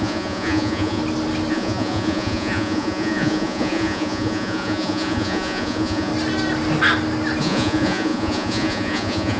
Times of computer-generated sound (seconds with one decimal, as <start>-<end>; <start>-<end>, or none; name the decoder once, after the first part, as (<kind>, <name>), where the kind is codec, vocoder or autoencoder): 0.0-1.0 (vocoder, Vocos); 1.5-6.1; 7.4-9.4